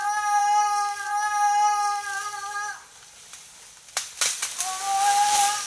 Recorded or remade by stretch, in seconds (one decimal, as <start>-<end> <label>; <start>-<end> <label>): 0.0-5.7 recorded